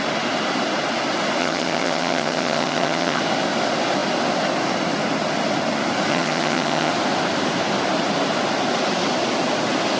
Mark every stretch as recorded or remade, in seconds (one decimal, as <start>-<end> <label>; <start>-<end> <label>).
0.0-1.4 recorded; 1.4-3.2 remade; 3.2-6.1 recorded; 6.1-6.9 remade; 6.9-10.0 recorded